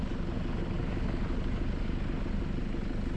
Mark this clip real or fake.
real